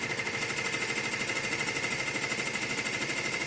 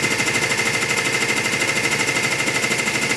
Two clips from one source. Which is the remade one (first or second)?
first